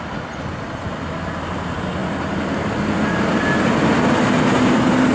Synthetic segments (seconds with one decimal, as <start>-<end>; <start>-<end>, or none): none